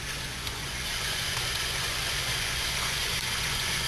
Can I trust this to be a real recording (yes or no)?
no